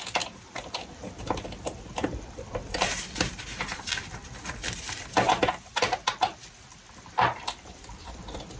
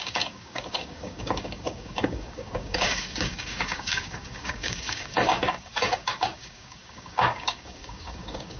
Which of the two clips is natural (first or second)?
first